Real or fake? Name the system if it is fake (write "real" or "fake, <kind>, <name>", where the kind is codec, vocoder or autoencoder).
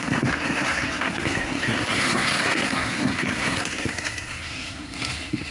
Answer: fake, codec, SNAC